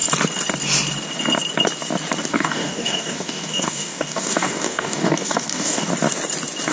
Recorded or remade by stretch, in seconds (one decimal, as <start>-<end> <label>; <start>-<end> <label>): 0.0-2.3 recorded; 2.3-5.9 remade; 5.9-6.7 recorded